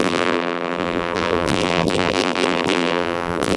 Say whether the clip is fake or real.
fake